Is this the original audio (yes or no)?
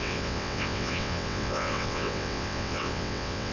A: no